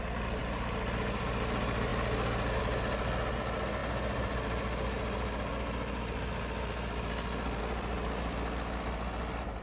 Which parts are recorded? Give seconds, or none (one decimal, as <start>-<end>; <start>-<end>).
0.0-9.6